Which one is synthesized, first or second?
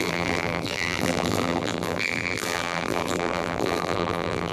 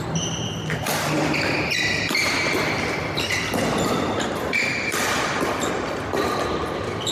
first